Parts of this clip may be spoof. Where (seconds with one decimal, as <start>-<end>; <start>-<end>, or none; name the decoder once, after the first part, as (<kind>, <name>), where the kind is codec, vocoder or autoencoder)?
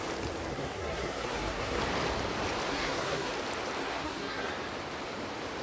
0.5-1.8 (codec, SNAC); 2.7-3.3; 3.8-4.5